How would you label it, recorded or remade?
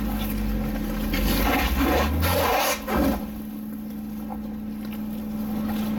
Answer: recorded